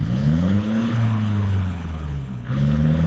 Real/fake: fake